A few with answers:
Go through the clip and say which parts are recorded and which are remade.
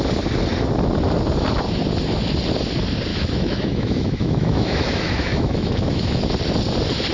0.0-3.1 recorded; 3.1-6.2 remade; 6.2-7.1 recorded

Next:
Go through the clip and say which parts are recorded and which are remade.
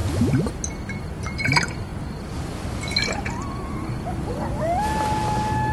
0.0-5.7 recorded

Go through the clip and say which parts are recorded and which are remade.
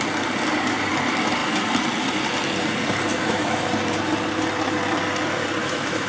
0.0-3.1 recorded; 3.1-3.7 remade; 3.7-5.6 recorded; 5.6-6.1 remade